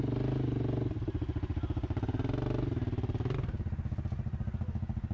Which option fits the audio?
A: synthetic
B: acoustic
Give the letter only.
B